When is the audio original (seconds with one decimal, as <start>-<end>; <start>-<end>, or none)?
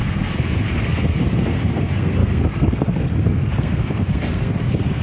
none